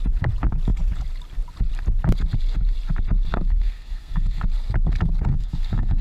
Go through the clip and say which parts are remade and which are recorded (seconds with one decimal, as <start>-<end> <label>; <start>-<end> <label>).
0.0-3.3 recorded; 3.3-4.4 remade; 4.4-5.3 recorded; 5.3-6.0 remade

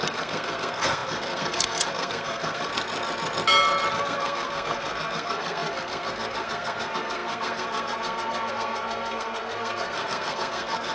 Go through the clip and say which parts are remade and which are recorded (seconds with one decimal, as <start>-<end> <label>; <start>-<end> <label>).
0.0-2.7 remade; 2.7-3.9 recorded; 3.9-10.9 remade

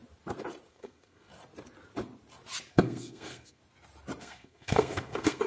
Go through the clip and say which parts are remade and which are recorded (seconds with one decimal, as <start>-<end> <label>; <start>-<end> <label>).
0.0-0.7 recorded; 0.7-1.3 remade; 1.3-2.7 recorded; 2.7-3.6 remade; 3.6-4.2 recorded; 4.2-5.5 remade

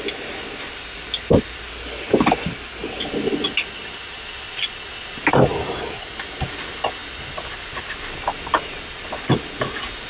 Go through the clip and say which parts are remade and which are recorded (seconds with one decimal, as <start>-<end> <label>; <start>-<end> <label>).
0.0-10.1 recorded